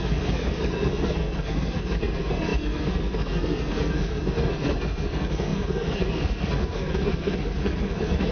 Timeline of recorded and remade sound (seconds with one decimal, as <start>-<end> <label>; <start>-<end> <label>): 0.0-8.3 remade